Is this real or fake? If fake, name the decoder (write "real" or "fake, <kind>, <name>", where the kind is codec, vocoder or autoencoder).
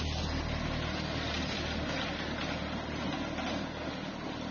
real